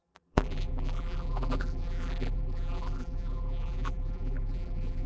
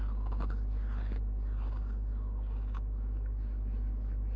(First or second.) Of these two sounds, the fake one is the first